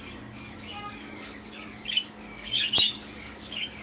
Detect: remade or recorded remade